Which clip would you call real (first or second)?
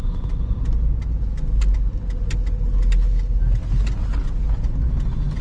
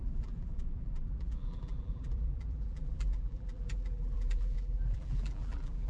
first